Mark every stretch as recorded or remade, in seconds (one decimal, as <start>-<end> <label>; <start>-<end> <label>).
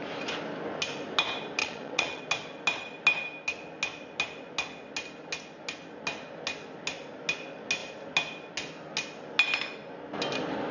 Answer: 0.0-1.6 recorded; 1.6-2.2 remade; 2.2-10.7 recorded